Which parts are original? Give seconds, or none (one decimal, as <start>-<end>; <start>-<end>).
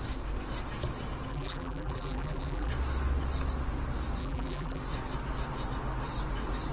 0.0-1.3; 2.7-4.2; 4.8-6.7